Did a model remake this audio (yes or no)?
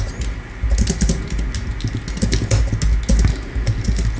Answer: no